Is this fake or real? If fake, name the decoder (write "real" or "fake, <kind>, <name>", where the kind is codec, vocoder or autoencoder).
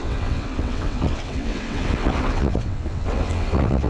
fake, vocoder, WaveNeXt